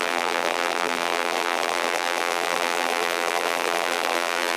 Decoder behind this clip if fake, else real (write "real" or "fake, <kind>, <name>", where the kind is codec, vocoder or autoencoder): fake, vocoder, BigVGAN v2